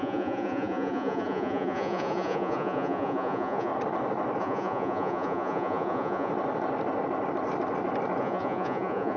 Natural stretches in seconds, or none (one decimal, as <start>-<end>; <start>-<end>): 3.7-4.4; 6.3-8.2